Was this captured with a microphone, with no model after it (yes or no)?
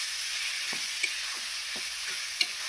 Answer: no